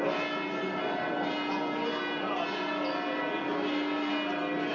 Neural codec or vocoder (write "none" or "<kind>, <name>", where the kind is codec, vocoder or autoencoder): none